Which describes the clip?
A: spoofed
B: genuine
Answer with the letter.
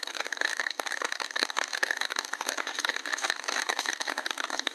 A